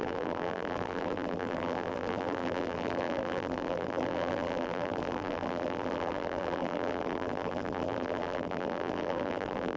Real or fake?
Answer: fake